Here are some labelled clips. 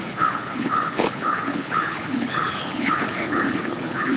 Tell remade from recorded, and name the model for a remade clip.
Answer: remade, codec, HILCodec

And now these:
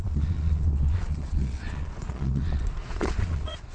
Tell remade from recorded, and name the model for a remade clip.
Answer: remade, vocoder, Vocos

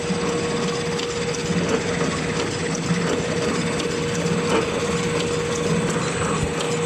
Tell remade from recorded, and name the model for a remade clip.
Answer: recorded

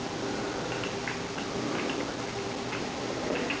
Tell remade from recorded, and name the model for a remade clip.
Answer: recorded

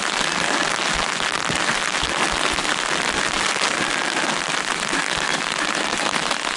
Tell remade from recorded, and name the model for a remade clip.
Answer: recorded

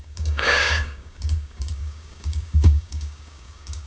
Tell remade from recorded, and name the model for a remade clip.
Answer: remade, codec, DAC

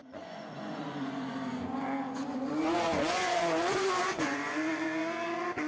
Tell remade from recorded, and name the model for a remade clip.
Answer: remade, vocoder, Vocos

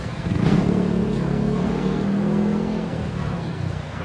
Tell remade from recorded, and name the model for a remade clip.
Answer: remade, codec, SNAC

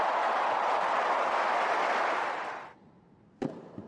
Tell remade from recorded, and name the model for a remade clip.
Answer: recorded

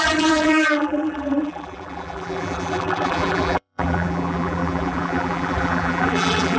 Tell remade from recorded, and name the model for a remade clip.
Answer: remade, vocoder, BigVGAN v2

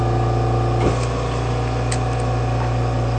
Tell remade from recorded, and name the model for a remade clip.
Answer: recorded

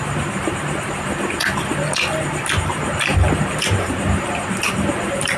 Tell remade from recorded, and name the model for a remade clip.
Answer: remade, vocoder, BigVGAN v2